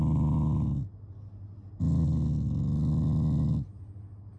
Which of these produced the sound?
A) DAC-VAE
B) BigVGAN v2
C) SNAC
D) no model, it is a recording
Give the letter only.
D